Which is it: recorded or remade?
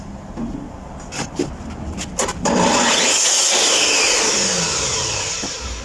recorded